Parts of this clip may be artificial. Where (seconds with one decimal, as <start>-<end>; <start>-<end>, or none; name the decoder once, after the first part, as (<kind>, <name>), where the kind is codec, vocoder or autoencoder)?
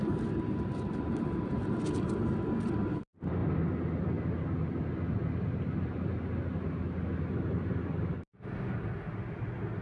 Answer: none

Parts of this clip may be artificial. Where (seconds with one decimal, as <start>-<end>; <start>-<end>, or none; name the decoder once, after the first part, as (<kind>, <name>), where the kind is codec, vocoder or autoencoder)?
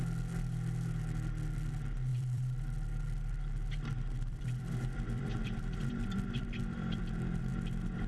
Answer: 2.1-7.0 (vocoder, BigVGAN v2)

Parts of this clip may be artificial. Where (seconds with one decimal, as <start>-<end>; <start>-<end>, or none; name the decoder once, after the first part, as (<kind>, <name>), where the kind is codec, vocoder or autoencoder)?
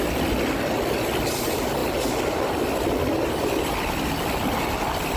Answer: none